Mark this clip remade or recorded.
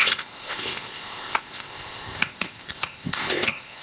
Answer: remade